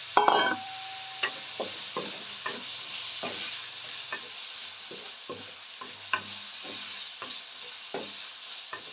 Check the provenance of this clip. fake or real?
fake